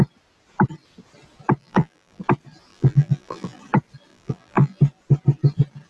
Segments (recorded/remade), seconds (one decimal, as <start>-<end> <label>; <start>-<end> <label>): 0.0-1.6 recorded; 1.6-2.2 remade; 2.2-2.7 recorded; 2.7-3.6 remade; 3.6-4.1 recorded; 4.1-4.8 remade; 4.8-5.9 recorded